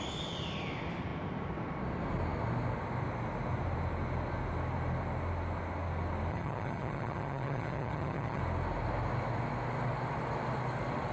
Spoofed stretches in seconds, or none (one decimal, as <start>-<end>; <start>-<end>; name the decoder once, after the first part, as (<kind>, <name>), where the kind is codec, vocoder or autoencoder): 6.3-8.4 (vocoder, HiFi-GAN)